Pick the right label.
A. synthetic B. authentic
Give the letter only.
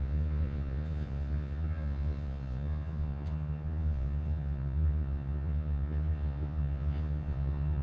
A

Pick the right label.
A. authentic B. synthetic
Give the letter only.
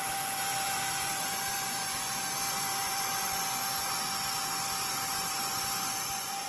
B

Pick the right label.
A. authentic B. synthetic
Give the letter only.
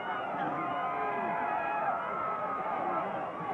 A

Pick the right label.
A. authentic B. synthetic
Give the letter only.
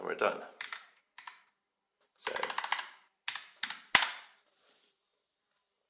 A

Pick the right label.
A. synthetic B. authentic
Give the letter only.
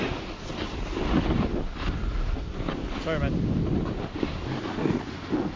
B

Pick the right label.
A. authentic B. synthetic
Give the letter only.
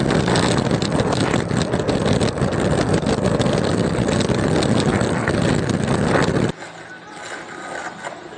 A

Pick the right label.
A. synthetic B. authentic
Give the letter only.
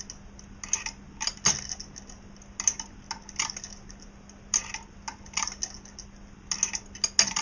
B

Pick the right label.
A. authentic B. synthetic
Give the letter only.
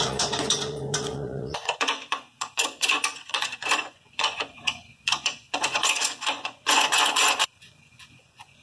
B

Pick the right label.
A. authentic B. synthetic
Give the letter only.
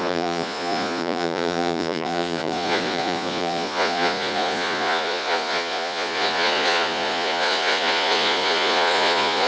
B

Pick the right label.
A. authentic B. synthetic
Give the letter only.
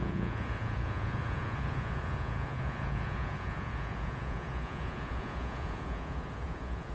B